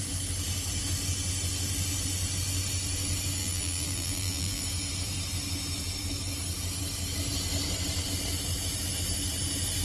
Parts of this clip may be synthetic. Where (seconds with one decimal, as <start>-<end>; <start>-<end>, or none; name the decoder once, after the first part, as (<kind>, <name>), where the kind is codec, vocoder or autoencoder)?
3.4-4.6 (vocoder, BigVGAN v2)